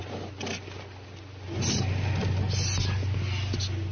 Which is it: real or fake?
real